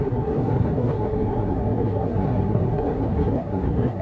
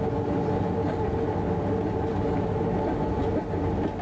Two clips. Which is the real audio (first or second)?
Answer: second